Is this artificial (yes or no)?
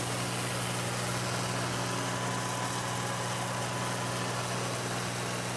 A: no